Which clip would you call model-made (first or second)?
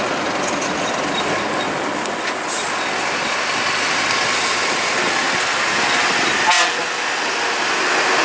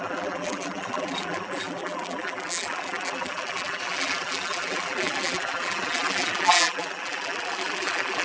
second